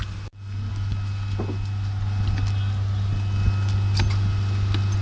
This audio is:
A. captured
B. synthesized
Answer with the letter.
A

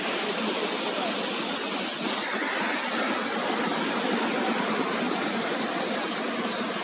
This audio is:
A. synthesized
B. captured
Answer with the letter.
B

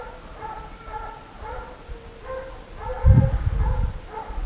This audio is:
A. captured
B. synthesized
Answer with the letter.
A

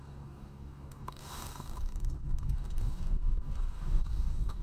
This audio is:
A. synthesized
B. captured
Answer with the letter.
A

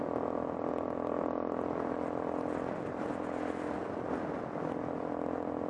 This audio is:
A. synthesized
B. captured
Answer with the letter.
B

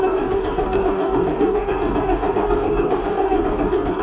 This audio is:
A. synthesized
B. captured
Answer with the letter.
A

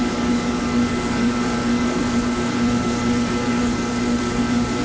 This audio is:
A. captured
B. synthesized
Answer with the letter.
B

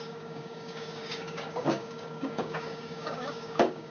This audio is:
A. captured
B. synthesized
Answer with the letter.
B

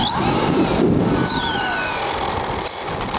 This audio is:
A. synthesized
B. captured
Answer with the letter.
B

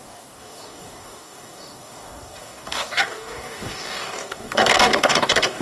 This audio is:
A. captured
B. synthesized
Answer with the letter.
B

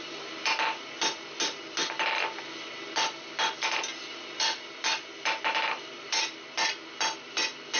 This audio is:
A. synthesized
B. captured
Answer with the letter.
B